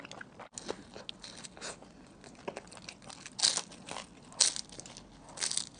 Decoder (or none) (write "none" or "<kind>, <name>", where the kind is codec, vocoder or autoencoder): none